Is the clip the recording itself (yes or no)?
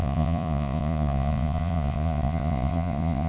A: no